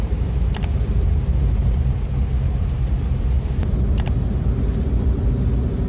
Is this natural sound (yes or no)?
yes